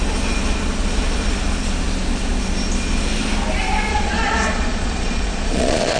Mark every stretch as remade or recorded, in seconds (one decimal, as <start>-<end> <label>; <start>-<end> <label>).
0.0-3.9 recorded; 3.9-6.0 remade